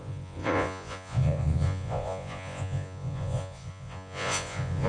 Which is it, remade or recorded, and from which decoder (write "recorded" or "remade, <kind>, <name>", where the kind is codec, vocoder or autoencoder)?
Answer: remade, vocoder, Vocos